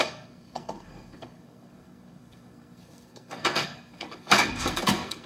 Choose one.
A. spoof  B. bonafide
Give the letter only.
A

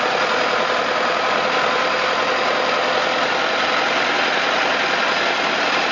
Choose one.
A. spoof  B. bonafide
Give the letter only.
B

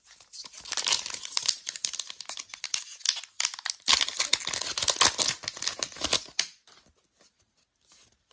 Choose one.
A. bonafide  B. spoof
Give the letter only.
A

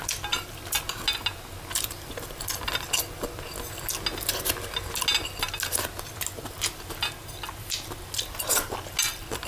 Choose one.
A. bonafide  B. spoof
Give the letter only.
A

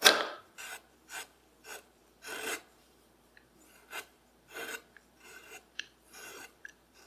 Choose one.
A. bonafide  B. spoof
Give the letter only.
B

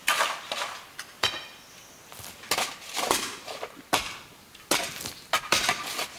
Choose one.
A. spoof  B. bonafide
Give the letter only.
B